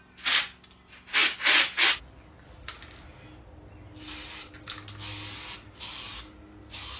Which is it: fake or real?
real